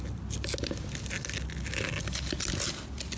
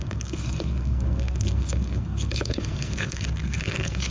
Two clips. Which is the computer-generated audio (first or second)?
second